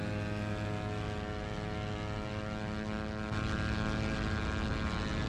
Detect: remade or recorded recorded